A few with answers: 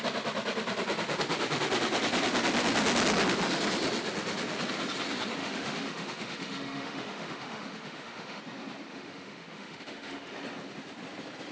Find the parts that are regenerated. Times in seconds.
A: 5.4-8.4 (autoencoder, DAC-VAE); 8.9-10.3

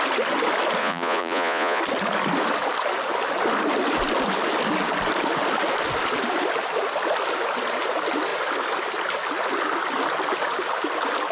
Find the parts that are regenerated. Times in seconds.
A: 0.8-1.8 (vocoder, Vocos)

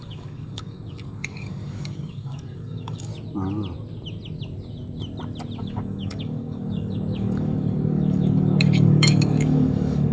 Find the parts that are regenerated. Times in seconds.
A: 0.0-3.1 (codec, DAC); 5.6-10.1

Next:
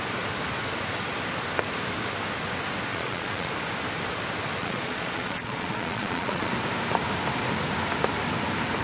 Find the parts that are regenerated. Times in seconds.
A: 2.9-3.5 (vocoder, Vocos); 4.6-6.5